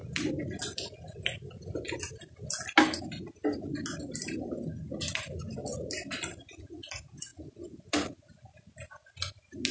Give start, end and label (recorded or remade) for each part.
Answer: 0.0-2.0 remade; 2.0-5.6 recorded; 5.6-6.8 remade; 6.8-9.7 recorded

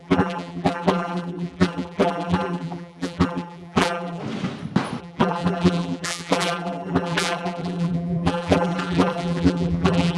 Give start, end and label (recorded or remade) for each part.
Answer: 0.0-4.2 remade; 4.2-5.0 recorded; 5.0-10.2 remade

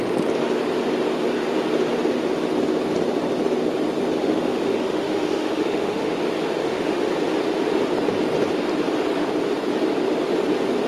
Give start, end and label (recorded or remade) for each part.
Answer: 0.0-4.2 recorded; 4.2-6.1 remade; 6.1-6.6 recorded; 6.6-7.1 remade; 7.1-10.9 recorded

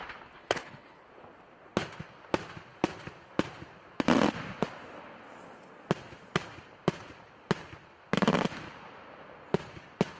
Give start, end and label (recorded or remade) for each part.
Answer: 0.0-0.4 recorded; 0.4-1.1 remade; 1.1-10.2 recorded

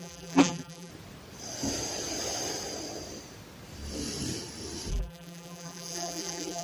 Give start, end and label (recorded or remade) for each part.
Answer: 0.0-0.9 remade; 0.9-4.9 recorded; 4.9-6.6 remade

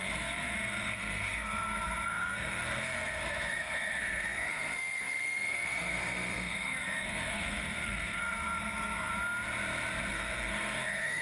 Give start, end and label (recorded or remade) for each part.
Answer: 0.0-9.1 remade; 9.1-10.1 recorded; 10.1-11.2 remade

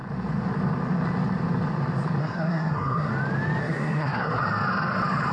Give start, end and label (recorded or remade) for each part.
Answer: 0.0-2.2 recorded; 2.2-3.1 remade; 3.1-3.6 recorded; 3.6-4.4 remade; 4.4-5.3 recorded

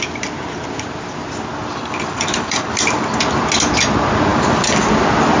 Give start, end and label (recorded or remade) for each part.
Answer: 0.0-1.7 recorded; 1.7-3.2 remade; 3.2-4.3 recorded; 4.3-4.9 remade; 4.9-5.4 recorded